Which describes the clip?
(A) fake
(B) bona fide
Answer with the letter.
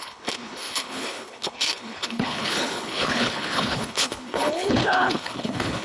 A